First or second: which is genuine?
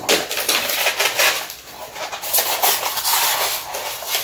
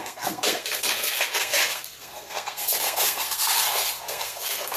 first